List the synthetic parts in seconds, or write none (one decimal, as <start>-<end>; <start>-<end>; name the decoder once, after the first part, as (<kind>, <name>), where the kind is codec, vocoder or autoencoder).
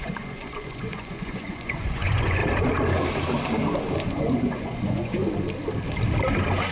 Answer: 0.0-2.4 (vocoder, Vocos); 4.1-5.2